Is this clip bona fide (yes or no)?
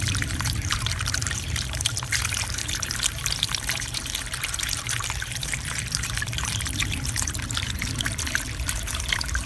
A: no